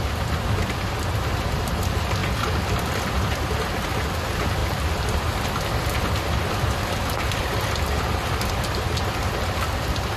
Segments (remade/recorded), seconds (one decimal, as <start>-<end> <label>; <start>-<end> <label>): 0.0-10.2 recorded